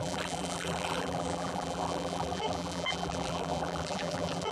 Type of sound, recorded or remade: remade